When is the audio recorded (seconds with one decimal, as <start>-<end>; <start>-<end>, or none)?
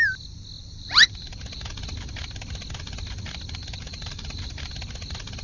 0.0-0.6; 1.7-3.6; 4.7-5.4